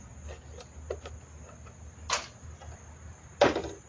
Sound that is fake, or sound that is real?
real